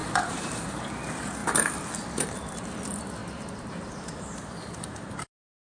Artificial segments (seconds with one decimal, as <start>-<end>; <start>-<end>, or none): 0.0-0.8; 3.2-5.8